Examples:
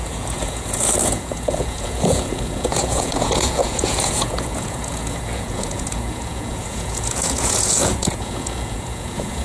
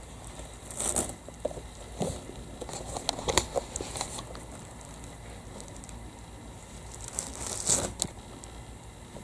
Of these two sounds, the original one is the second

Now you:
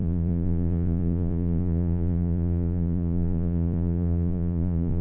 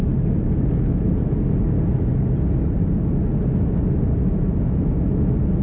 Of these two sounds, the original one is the second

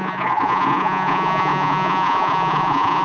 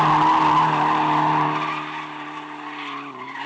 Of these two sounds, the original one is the second